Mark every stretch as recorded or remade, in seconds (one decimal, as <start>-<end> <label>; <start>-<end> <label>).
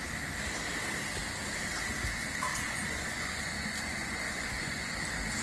0.0-2.5 recorded; 2.5-4.9 remade; 4.9-5.4 recorded